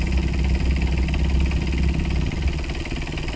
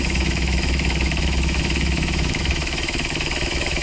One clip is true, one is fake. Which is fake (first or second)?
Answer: second